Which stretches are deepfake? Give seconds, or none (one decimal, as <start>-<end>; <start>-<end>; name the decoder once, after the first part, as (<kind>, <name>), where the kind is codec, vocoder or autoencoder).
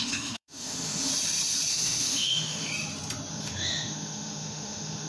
0.0-1.1 (autoencoder, DAC-VAE); 1.7-2.7; 3.3-5.1